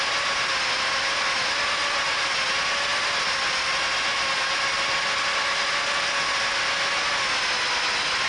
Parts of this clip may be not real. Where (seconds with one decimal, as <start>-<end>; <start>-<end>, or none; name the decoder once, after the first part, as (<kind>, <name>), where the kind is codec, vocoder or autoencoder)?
none